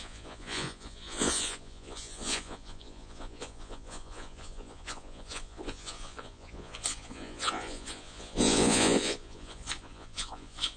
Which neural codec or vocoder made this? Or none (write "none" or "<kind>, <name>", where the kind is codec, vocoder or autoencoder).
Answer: vocoder, Vocos